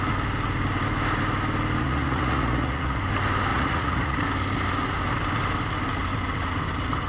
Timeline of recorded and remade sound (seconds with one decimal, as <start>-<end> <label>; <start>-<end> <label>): 0.0-1.8 recorded; 1.8-3.0 remade; 3.0-3.5 recorded; 3.5-4.2 remade; 4.2-7.1 recorded